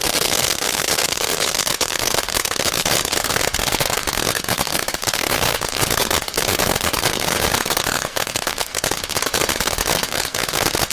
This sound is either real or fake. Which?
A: fake